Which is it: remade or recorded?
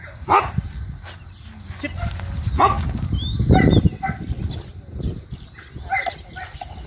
recorded